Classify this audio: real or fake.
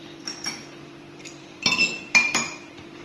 fake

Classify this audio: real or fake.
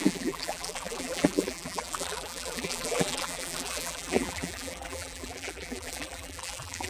fake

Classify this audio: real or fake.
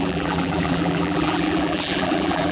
fake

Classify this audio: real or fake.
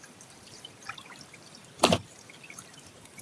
fake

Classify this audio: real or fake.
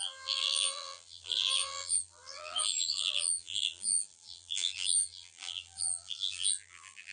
fake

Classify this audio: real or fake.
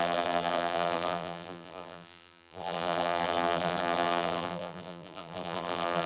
fake